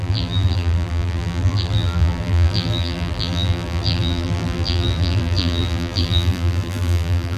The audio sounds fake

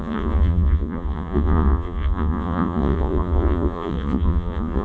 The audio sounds fake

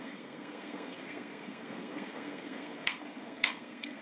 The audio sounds fake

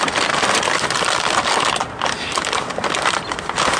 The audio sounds real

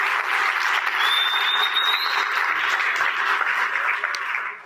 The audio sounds real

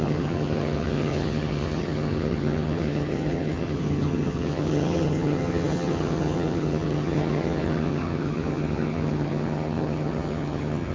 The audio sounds fake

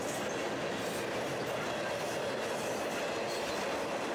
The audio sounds real